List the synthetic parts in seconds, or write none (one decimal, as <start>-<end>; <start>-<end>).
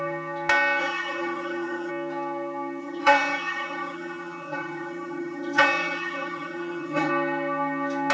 0.8-1.9; 2.8-7.1